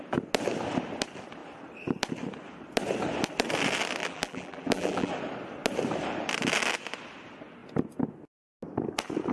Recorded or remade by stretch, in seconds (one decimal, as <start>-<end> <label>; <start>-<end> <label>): 0.0-4.0 recorded; 4.0-5.1 remade; 5.1-9.3 recorded